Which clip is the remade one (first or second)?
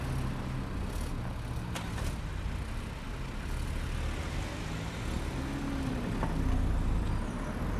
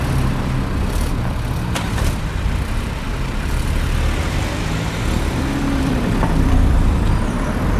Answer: second